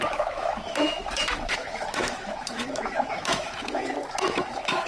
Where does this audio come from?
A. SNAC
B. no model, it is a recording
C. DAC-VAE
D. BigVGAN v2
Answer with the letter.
C